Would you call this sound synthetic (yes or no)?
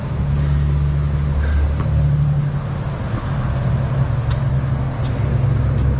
no